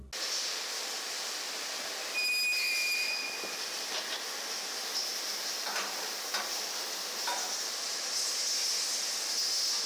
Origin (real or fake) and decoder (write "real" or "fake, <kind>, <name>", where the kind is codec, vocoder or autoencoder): real